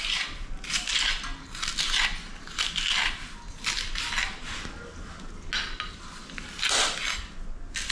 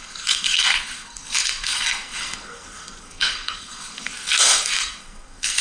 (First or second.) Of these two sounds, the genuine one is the first